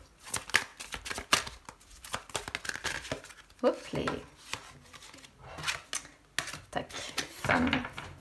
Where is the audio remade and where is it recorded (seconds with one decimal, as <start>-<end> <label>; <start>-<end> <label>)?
0.0-8.2 recorded